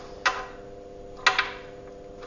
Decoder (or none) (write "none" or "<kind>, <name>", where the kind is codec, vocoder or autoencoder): none